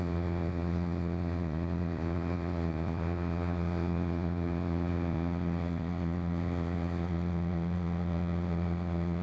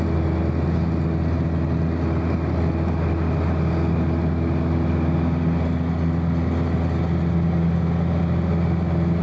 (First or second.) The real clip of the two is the second